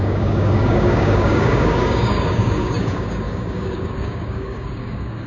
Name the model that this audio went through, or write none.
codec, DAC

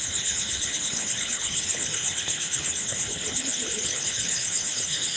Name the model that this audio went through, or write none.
codec, HILCodec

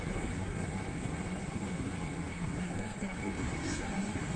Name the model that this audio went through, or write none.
codec, SNAC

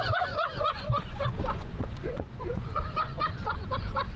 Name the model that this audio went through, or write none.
vocoder, Vocos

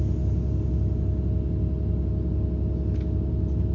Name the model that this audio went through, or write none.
none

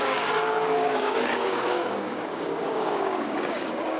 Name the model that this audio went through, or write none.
codec, DAC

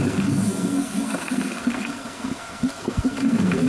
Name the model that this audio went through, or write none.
codec, SNAC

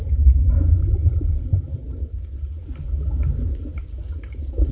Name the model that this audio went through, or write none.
none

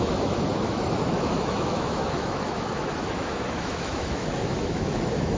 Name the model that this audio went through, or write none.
autoencoder, DAC-VAE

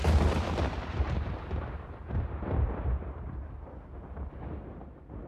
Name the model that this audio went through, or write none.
none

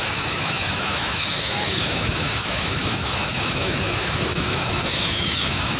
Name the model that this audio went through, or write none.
autoencoder, DAC-VAE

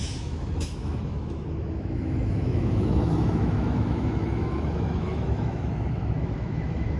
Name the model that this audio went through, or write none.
autoencoder, DAC-VAE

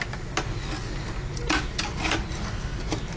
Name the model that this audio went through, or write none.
none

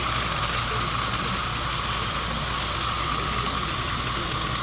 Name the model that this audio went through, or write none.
none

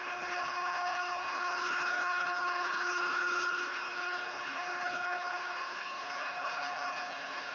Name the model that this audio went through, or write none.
codec, HILCodec